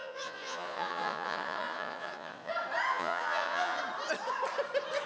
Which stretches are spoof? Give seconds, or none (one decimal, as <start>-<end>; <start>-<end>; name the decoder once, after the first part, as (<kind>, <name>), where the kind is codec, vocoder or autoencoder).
0.0-2.5 (vocoder, Vocos); 2.9-3.8